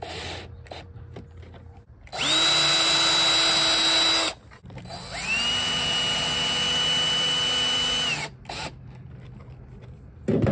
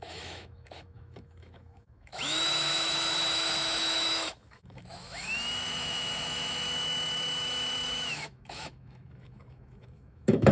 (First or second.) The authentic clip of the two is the first